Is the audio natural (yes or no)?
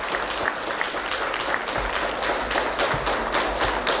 yes